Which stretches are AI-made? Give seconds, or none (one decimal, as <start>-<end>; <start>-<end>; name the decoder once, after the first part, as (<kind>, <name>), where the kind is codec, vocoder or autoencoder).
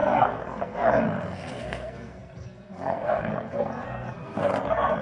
0.0-5.0 (codec, SNAC)